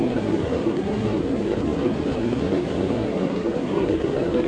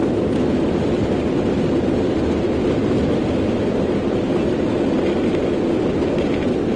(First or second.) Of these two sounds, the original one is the second